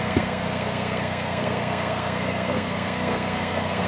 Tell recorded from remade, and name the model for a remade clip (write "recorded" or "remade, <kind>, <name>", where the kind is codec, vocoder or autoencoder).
remade, codec, SNAC